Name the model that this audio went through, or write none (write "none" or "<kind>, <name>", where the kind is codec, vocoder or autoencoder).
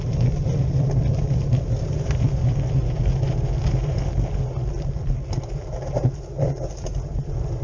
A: none